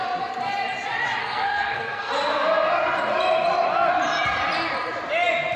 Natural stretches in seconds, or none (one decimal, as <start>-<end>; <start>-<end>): 0.0-1.2; 2.1-5.6